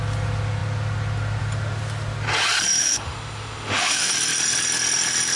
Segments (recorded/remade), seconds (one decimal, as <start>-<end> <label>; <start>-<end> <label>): 0.0-2.8 recorded; 2.8-4.1 remade; 4.1-5.4 recorded